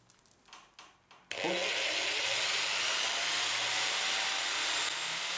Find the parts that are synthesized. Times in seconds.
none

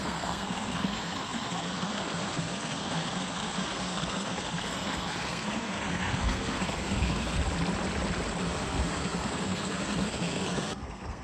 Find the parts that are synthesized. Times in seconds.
0.0-7.4; 8.4-11.2

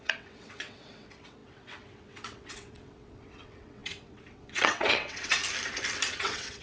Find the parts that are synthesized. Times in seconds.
0.0-5.4; 6.1-6.6

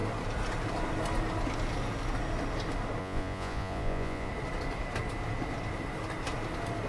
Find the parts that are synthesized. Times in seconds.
3.0-4.3